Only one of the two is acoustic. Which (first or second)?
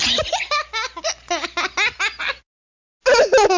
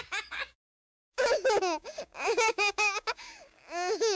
first